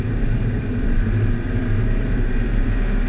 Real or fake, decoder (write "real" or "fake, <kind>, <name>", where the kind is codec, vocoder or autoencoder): fake, vocoder, BigVGAN v2